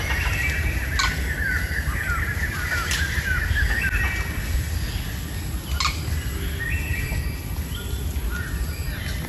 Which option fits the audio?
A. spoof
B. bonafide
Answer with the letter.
B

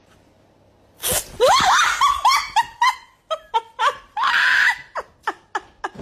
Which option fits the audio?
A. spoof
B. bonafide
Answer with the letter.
B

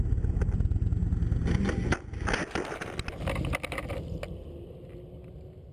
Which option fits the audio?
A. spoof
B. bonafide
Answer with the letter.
B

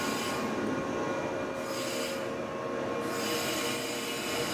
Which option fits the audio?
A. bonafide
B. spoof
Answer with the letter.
A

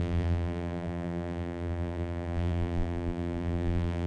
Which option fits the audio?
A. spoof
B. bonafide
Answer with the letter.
A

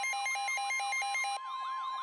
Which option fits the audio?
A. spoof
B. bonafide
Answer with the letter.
B